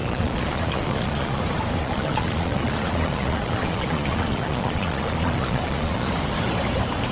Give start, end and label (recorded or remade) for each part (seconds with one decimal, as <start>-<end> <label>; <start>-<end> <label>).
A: 0.0-1.4 remade; 1.4-1.8 recorded; 1.8-6.1 remade; 6.1-7.1 recorded